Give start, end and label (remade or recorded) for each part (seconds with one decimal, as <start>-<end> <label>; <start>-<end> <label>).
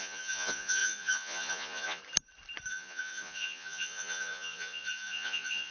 0.0-2.0 remade; 2.0-2.7 recorded; 2.7-5.7 remade